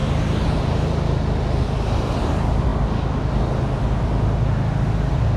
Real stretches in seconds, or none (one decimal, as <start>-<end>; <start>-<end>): 0.0-5.4